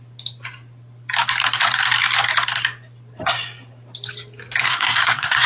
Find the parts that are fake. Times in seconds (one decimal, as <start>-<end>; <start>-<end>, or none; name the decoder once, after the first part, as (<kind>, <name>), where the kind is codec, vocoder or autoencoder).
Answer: 4.6-5.5 (codec, SNAC)